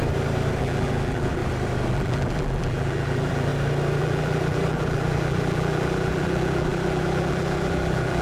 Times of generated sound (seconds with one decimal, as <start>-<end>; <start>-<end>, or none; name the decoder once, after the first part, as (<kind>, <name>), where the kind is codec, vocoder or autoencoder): 0.6-1.4 (vocoder, BigVGAN v2); 1.9-3.5; 4.0-8.2